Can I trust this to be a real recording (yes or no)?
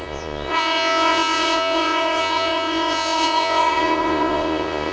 no